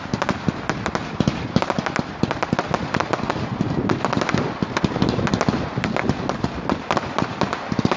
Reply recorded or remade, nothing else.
recorded